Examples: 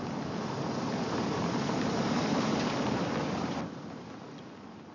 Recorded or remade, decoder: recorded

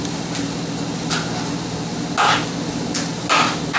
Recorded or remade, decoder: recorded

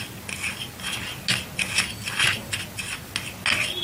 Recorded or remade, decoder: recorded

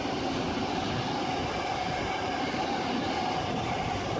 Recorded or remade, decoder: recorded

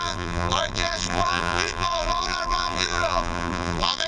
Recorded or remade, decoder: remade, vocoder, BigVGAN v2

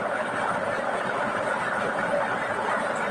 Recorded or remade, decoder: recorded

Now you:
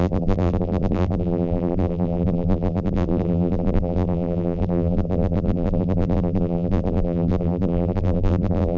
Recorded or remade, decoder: remade, vocoder, BigVGAN v2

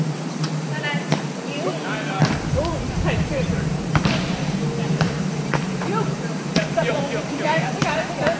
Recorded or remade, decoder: remade, vocoder, BigVGAN v2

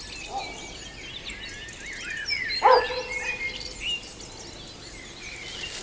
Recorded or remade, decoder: recorded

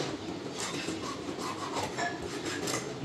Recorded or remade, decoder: recorded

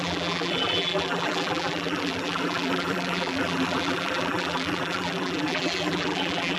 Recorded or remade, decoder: remade, vocoder, BigVGAN v2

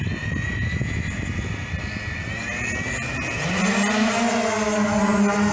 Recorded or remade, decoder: recorded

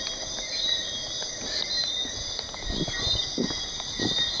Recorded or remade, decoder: recorded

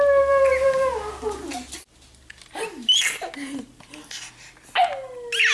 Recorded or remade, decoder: recorded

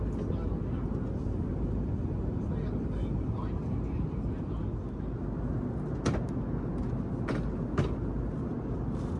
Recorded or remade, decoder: recorded